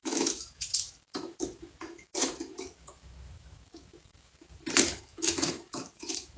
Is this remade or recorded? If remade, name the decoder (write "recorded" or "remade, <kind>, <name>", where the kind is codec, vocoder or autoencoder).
remade, autoencoder, DAC-VAE